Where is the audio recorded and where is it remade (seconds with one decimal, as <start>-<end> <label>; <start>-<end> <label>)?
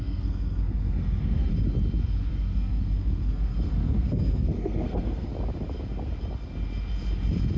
0.0-1.5 remade; 1.5-2.3 recorded; 2.3-5.3 remade; 5.3-7.6 recorded